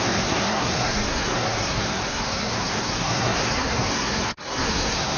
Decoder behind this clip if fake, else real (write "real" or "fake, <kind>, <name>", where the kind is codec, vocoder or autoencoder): fake, codec, SNAC